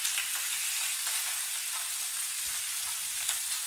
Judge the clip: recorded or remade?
recorded